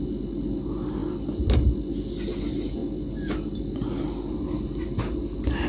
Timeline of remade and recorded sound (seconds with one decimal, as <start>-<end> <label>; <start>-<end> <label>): 0.0-5.7 recorded